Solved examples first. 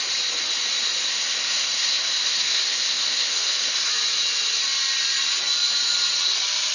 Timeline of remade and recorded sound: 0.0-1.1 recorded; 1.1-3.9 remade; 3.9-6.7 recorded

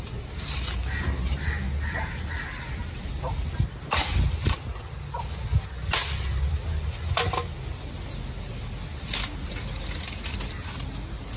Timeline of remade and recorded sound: 0.0-11.4 recorded

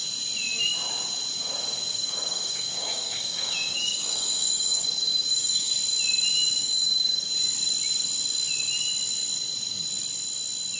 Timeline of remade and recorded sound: 0.0-1.9 recorded; 1.9-5.7 remade; 5.7-6.6 recorded; 6.6-7.3 remade; 7.3-10.8 recorded

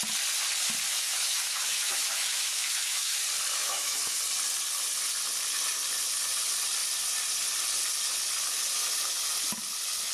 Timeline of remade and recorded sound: 0.0-0.9 recorded; 0.9-3.2 remade; 3.2-3.6 recorded; 3.6-4.2 remade; 4.2-10.1 recorded

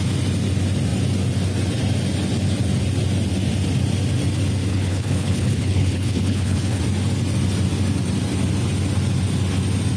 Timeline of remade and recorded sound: 0.0-4.7 recorded; 4.7-6.8 remade; 6.8-10.0 recorded

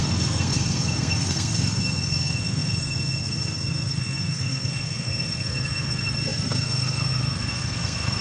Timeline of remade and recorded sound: 0.0-8.2 remade